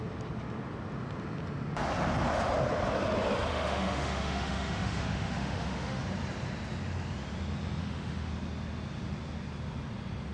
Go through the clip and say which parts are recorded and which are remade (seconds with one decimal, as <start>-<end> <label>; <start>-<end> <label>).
0.0-3.5 recorded; 3.5-6.0 remade; 6.0-7.8 recorded; 7.8-8.3 remade; 8.3-10.3 recorded